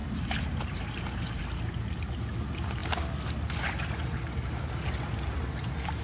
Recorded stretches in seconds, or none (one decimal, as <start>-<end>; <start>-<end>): 1.4-6.0